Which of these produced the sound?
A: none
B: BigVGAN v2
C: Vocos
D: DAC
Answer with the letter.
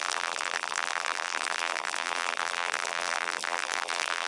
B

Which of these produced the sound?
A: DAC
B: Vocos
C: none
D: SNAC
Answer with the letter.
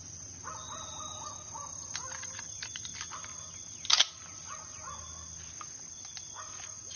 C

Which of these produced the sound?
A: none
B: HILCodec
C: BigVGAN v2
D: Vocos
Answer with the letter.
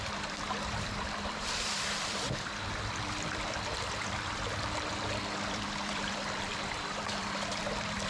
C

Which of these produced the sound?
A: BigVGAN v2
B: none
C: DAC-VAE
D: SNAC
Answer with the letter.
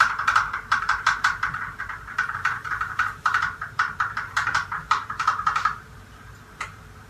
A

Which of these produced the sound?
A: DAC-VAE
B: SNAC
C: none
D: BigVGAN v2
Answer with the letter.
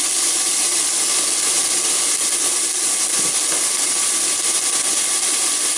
C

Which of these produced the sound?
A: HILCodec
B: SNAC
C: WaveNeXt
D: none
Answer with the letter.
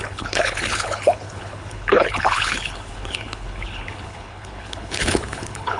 A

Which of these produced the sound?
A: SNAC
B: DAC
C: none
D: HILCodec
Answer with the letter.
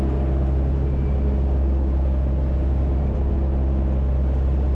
C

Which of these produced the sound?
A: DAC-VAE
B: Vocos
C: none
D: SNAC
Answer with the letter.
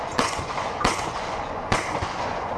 B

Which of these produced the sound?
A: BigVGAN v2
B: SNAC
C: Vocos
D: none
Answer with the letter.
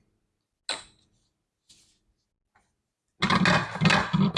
D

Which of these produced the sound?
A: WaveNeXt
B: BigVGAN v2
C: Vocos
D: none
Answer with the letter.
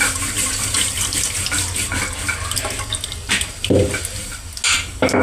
D